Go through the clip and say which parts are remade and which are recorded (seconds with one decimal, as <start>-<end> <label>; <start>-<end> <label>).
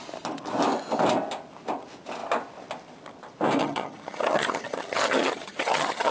0.0-3.6 recorded; 3.6-6.1 remade